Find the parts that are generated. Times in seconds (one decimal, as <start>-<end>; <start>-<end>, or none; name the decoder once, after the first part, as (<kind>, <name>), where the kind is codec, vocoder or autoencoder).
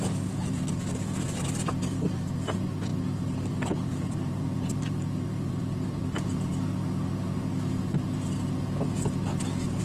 0.0-2.9 (vocoder, BigVGAN v2); 3.4-6.5